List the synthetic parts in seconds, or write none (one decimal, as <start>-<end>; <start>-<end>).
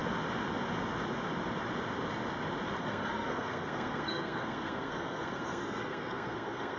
2.8-6.8